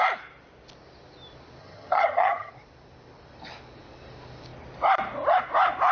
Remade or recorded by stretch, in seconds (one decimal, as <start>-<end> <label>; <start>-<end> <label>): 0.0-1.6 recorded; 1.6-2.5 remade; 2.5-5.9 recorded